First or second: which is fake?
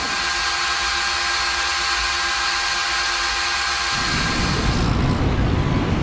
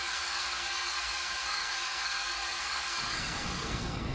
second